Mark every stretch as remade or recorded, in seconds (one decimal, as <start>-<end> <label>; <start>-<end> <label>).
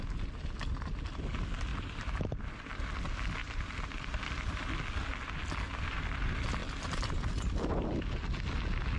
0.0-1.7 recorded; 1.7-3.0 remade; 3.0-3.4 recorded; 3.4-5.5 remade; 5.5-6.6 recorded; 6.6-7.3 remade; 7.3-9.0 recorded